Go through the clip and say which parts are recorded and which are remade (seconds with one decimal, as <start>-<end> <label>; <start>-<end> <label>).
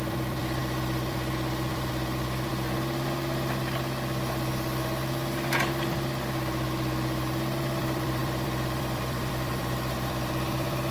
0.0-2.5 remade; 2.5-7.6 recorded; 7.6-10.9 remade